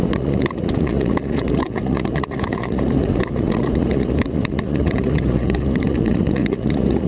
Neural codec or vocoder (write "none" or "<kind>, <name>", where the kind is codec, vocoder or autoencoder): vocoder, Vocos